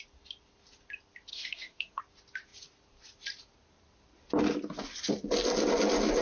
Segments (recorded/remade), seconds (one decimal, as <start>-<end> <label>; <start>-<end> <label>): 0.0-1.3 recorded; 1.3-2.0 remade; 2.0-6.2 recorded